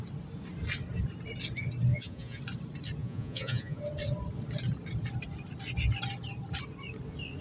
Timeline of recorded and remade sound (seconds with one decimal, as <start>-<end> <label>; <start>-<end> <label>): 0.0-1.9 recorded; 1.9-2.4 remade; 2.4-3.0 recorded; 3.0-3.8 remade; 3.8-7.4 recorded